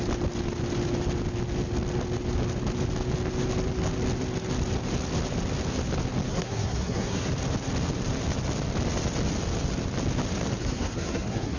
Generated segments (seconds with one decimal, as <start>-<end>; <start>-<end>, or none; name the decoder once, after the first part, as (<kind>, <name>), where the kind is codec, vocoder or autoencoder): 6.3-7.3 (codec, SNAC); 10.6-11.6